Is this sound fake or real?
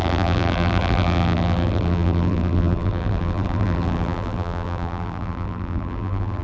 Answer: fake